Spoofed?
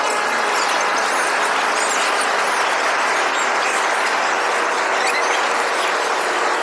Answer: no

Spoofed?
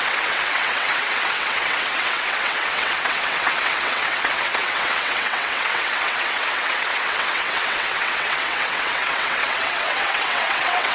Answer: yes